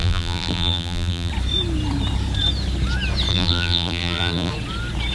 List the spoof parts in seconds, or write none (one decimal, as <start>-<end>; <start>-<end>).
0.0-1.3; 3.3-4.5